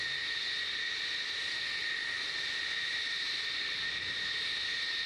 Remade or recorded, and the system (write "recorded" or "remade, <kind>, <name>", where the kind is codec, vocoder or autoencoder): recorded